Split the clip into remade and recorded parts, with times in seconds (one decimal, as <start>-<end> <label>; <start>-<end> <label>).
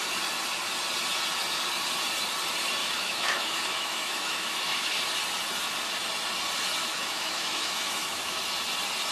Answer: 0.0-2.8 recorded; 2.8-5.0 remade; 5.0-6.8 recorded; 6.8-8.4 remade; 8.4-9.1 recorded